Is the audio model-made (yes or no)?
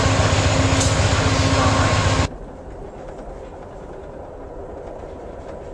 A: no